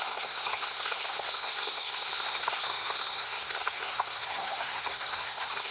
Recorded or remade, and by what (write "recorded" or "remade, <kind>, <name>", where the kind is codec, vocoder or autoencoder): remade, codec, SNAC